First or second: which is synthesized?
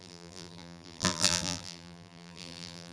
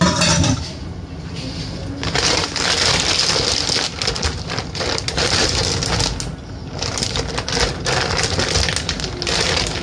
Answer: first